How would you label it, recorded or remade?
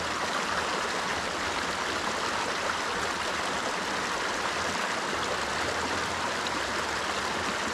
recorded